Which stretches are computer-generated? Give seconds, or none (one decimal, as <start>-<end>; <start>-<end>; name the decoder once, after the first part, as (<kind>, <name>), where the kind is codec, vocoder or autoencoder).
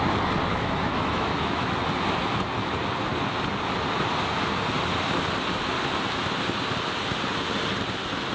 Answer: 0.5-1.7 (autoencoder, DAC-VAE)